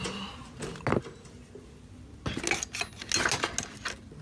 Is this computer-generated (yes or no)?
no